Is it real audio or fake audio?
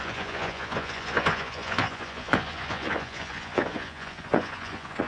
fake